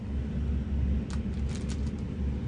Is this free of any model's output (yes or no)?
yes